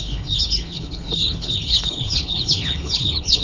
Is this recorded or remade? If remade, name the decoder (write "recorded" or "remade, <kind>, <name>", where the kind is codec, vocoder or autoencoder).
remade, codec, HILCodec